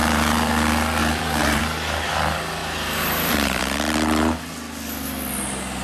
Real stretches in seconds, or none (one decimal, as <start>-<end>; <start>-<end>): 0.5-1.0; 1.6-2.6; 3.6-5.8